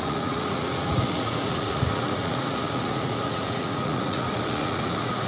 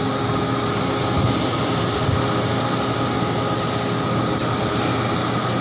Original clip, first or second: second